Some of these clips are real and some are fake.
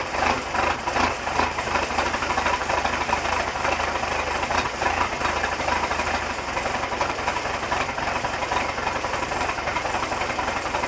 fake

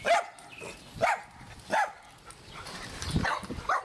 real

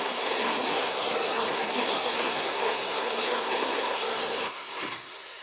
fake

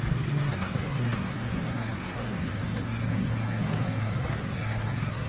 fake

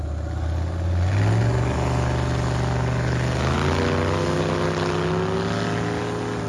real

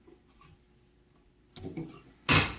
real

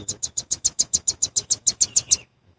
fake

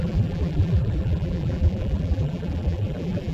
fake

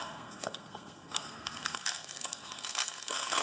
fake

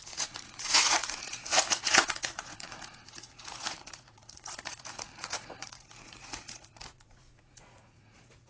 fake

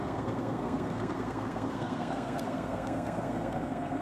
fake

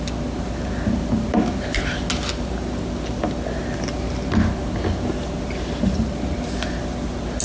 real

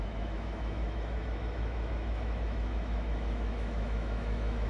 fake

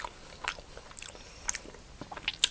real